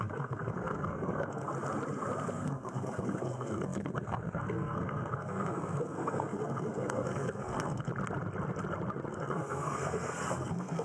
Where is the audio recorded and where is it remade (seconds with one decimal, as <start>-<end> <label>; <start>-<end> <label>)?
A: 0.0-1.5 remade; 1.5-2.3 recorded; 2.3-7.9 remade; 7.9-9.1 recorded; 9.1-10.8 remade

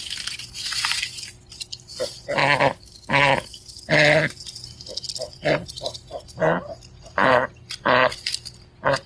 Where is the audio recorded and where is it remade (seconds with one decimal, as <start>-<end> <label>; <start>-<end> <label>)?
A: 0.0-9.1 recorded

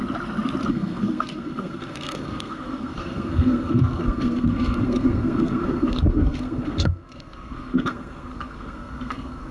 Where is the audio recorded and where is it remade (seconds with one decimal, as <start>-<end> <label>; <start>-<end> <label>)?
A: 0.0-0.7 recorded; 0.7-9.5 remade

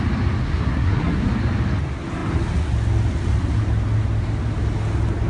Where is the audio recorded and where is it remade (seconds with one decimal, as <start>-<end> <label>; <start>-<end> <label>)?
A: 0.0-0.4 recorded; 0.4-1.3 remade; 1.3-5.3 recorded